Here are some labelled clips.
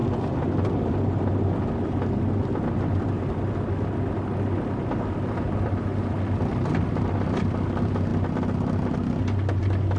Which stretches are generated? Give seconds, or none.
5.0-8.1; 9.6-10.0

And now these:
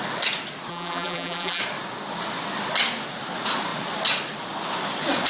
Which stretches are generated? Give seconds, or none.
0.7-1.6